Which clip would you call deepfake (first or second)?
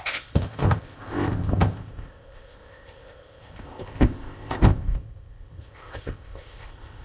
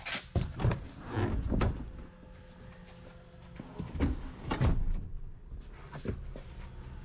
first